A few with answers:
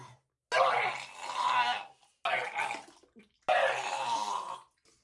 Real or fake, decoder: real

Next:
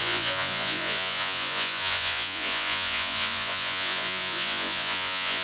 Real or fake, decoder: fake, vocoder, Vocos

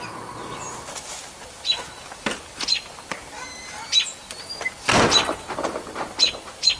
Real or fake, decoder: real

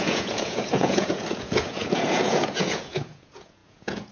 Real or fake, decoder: fake, vocoder, Vocos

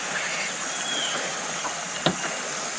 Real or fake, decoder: real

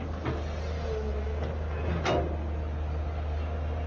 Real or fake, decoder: real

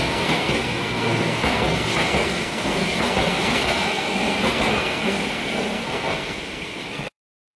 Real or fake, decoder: fake, codec, SNAC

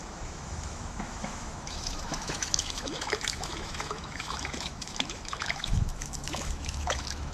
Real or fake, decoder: fake, autoencoder, DAC-VAE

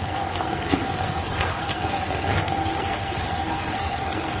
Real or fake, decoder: fake, codec, SNAC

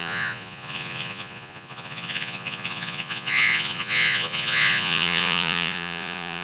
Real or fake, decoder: fake, vocoder, Vocos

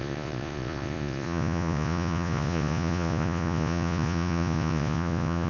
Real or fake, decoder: fake, vocoder, Vocos